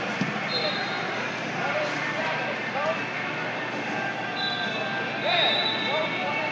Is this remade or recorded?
remade